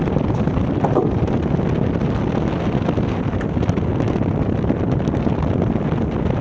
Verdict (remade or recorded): recorded